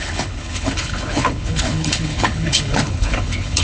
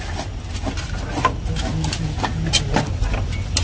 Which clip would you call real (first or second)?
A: second